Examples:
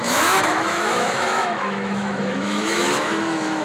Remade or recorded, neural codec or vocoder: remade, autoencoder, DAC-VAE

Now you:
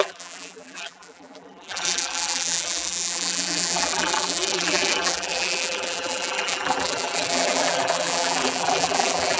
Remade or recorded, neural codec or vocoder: remade, vocoder, BigVGAN v2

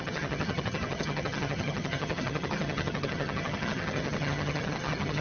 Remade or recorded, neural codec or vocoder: remade, vocoder, HiFi-GAN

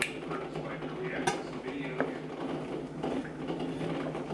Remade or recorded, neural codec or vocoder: recorded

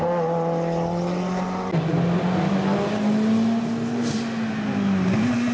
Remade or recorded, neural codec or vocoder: recorded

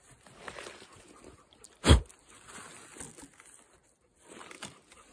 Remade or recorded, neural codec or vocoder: recorded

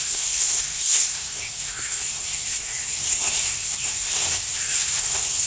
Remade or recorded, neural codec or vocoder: remade, codec, SNAC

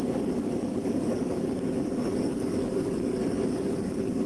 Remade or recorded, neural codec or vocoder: remade, codec, DAC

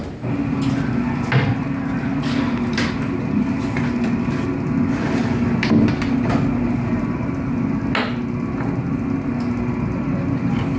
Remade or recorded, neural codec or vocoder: recorded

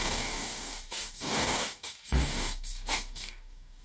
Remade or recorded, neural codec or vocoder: remade, codec, DAC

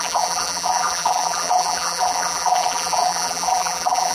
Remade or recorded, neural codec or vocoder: remade, vocoder, BigVGAN v2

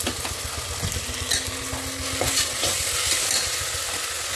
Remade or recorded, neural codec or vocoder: recorded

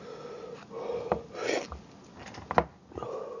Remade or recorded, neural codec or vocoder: recorded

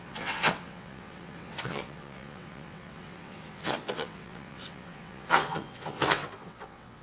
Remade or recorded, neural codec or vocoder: remade, vocoder, WaveNeXt